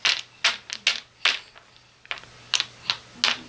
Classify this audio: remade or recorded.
recorded